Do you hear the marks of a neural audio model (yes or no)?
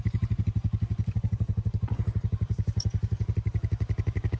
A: yes